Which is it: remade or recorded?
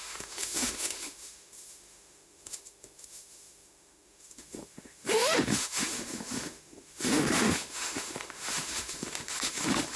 remade